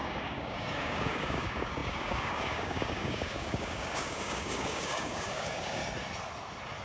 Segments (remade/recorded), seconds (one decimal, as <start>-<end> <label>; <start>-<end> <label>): 0.0-5.8 remade; 5.8-6.8 recorded